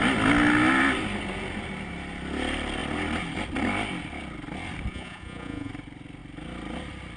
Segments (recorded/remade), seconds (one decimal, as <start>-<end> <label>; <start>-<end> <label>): 0.0-4.9 recorded; 4.9-5.7 remade; 5.7-7.2 recorded